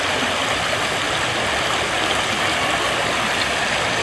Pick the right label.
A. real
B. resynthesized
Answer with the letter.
A